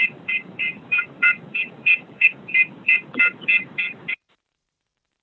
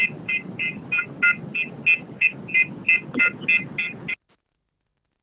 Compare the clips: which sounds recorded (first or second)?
second